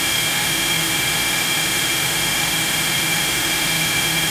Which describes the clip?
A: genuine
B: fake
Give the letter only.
B